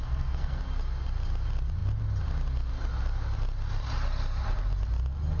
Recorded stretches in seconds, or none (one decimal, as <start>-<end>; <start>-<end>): 0.6-5.4